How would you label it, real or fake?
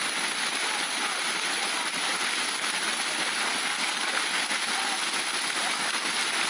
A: real